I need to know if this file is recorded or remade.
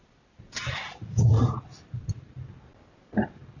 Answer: recorded